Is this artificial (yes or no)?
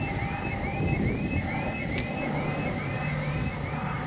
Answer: no